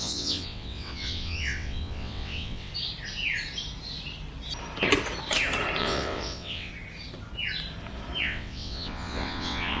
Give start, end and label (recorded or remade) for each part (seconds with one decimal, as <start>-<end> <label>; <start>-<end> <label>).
0.0-2.7 remade; 2.7-5.8 recorded; 5.8-6.7 remade; 6.7-8.2 recorded; 8.2-9.8 remade